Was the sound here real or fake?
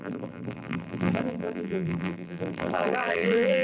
fake